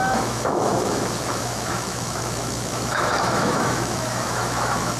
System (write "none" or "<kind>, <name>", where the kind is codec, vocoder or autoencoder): autoencoder, DAC-VAE